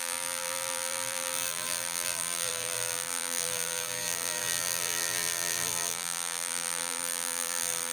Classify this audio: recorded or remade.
remade